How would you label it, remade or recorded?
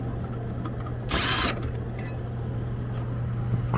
recorded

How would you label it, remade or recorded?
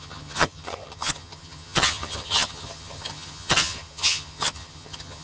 remade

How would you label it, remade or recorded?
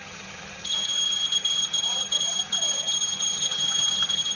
remade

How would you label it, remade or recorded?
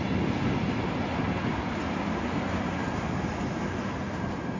recorded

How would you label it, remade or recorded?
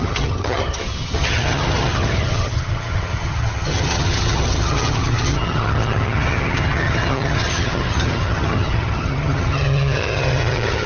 remade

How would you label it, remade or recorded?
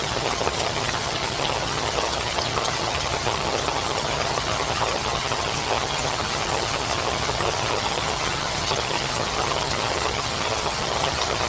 remade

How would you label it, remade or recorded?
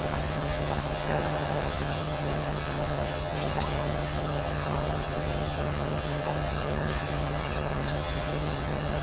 remade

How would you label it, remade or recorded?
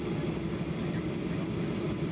recorded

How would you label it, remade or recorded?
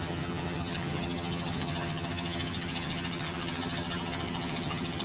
remade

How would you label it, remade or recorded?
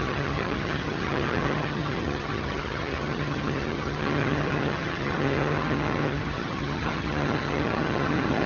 remade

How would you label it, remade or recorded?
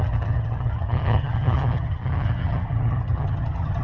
remade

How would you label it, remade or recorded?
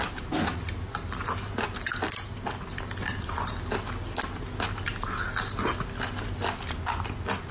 recorded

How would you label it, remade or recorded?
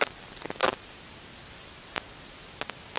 recorded